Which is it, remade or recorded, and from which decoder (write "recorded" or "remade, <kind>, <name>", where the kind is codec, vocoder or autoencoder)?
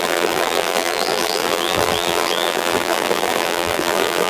remade, vocoder, BigVGAN v2